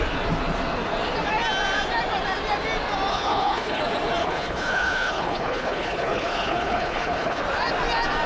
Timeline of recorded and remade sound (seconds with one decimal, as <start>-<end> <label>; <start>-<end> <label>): 0.0-3.1 recorded; 3.1-3.8 remade; 3.8-4.2 recorded; 4.2-7.4 remade; 7.4-8.3 recorded